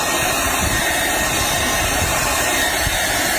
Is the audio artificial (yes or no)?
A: no